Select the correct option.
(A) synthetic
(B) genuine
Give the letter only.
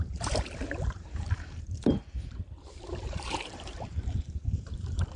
A